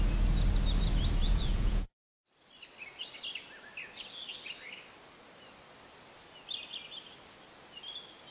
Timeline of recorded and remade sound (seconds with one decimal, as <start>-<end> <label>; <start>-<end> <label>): 0.0-1.2 recorded; 1.2-2.2 remade; 2.2-8.3 recorded